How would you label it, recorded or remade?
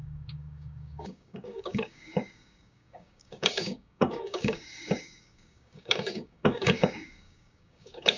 remade